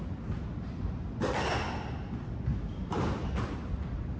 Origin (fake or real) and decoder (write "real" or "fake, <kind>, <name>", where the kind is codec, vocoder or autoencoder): real